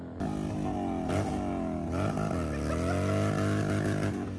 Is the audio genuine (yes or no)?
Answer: yes